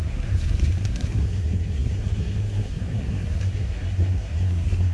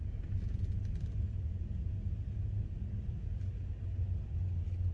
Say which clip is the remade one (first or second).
first